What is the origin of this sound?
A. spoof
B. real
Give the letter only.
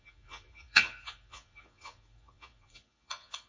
A